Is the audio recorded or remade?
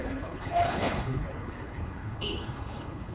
remade